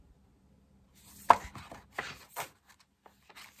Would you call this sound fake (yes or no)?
no